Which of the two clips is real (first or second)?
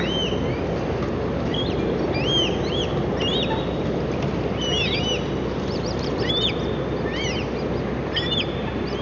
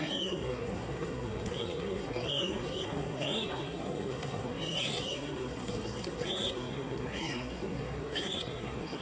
first